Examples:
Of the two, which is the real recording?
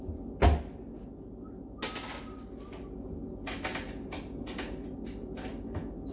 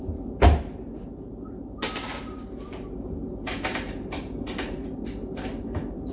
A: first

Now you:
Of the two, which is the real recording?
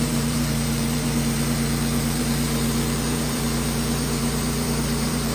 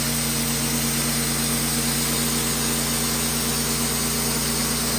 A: second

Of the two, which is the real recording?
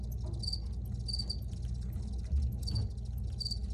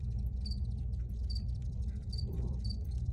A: first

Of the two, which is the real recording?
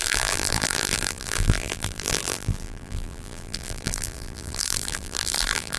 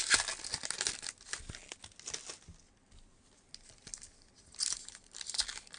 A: second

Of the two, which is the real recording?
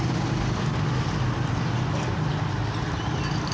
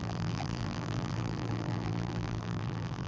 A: first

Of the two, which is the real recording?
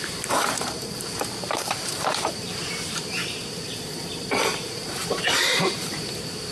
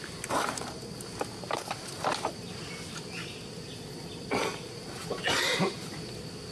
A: second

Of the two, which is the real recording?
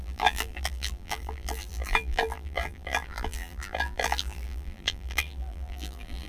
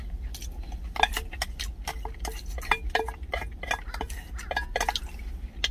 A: second